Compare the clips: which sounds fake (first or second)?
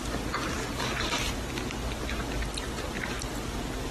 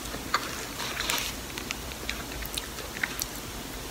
second